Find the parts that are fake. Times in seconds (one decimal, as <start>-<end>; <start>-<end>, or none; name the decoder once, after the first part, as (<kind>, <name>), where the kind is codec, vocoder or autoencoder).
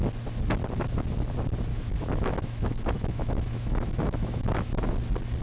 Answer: 1.7-4.9 (autoencoder, DAC-VAE)